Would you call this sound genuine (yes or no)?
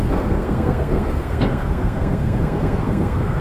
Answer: no